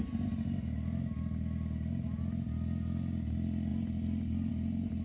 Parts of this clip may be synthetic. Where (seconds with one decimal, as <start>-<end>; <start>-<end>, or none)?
none